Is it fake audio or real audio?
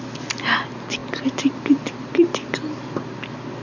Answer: real